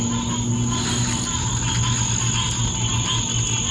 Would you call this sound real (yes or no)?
yes